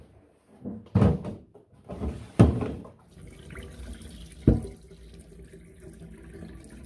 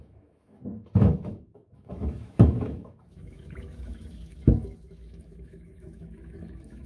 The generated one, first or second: second